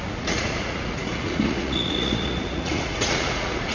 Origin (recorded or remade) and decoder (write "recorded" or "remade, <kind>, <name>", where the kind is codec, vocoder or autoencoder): remade, vocoder, Vocos